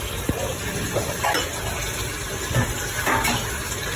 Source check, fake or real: real